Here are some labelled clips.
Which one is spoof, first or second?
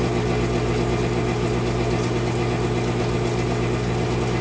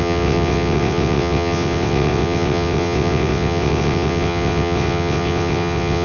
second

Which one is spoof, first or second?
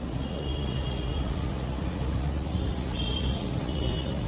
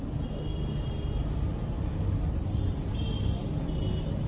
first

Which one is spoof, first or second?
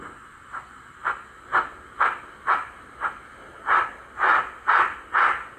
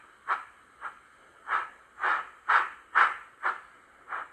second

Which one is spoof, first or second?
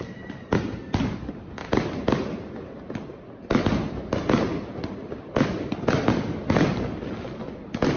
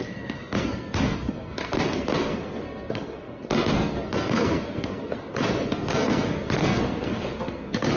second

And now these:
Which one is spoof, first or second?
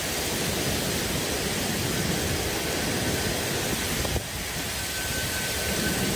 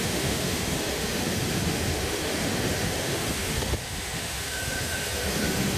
second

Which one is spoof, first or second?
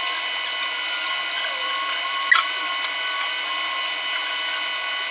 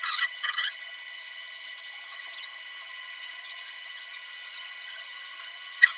second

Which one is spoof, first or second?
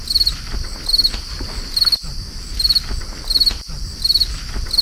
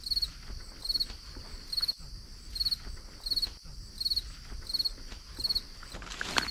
first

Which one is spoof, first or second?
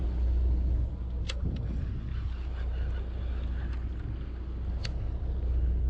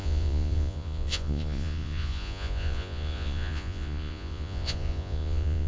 second